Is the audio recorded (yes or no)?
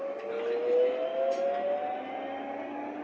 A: yes